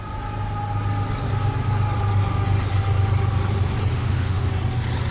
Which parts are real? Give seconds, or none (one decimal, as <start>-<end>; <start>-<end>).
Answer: 0.0-3.9; 4.5-5.1